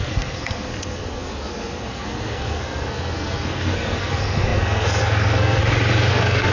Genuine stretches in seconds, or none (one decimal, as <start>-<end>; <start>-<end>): 5.6-6.1